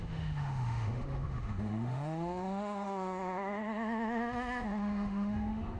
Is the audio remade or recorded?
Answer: remade